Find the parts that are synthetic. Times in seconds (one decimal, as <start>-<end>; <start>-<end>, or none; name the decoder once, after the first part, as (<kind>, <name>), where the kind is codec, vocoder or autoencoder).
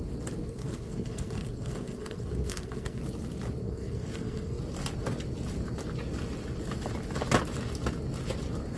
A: 0.4-3.0 (codec, SNAC); 3.6-4.6